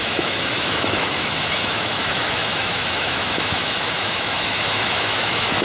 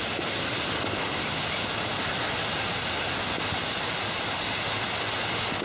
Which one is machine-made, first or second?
first